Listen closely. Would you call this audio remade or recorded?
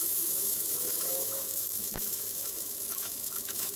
remade